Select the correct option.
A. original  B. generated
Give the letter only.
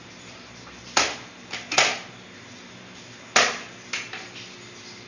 A